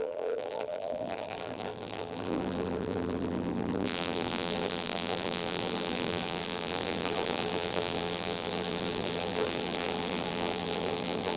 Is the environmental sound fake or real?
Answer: fake